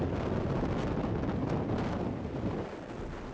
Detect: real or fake real